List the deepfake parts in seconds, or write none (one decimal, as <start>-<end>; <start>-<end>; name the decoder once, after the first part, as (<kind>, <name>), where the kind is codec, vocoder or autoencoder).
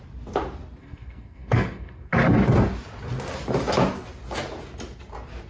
0.8-2.1 (codec, SNAC)